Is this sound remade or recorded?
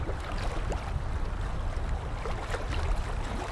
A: recorded